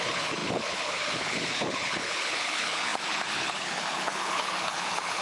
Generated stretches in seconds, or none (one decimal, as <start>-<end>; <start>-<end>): 0.0-5.2